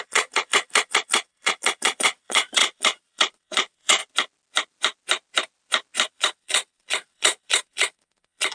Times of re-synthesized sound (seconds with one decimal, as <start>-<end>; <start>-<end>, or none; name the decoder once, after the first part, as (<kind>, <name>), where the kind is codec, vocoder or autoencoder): 0.0-4.0 (vocoder, Vocos); 6.1-8.5